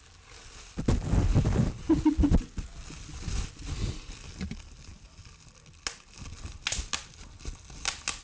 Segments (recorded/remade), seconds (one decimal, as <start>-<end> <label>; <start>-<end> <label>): 0.0-8.2 recorded